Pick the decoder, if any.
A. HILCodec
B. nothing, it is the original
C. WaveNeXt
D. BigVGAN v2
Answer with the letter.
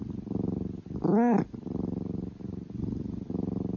B